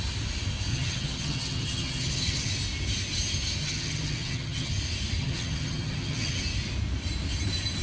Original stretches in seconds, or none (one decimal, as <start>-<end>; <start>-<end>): 0.0-0.7; 2.5-3.6; 4.7-5.2; 6.4-7.8